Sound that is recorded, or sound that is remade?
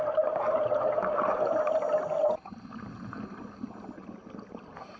recorded